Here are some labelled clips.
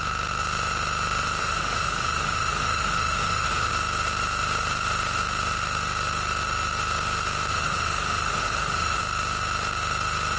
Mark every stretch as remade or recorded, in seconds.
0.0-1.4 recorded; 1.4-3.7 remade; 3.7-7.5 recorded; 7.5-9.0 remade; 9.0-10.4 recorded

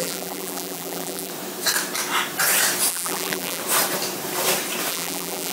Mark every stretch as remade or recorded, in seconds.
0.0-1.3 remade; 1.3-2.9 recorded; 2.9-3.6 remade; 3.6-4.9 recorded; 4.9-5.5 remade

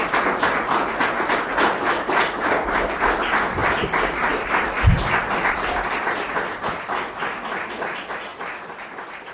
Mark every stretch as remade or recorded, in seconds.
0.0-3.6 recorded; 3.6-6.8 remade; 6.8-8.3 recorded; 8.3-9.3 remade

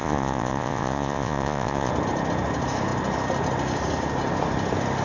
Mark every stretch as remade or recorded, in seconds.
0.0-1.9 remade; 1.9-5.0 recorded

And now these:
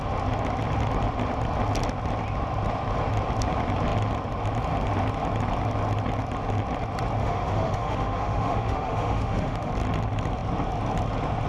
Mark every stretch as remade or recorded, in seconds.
0.0-7.2 recorded; 7.2-9.7 remade; 9.7-11.5 recorded

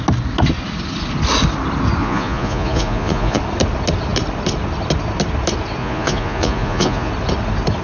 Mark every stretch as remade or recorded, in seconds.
0.0-2.0 recorded; 2.0-3.4 remade; 3.4-5.8 recorded; 5.8-7.1 remade; 7.1-7.8 recorded